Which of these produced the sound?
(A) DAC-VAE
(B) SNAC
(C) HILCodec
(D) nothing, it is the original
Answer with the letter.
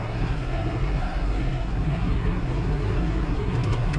B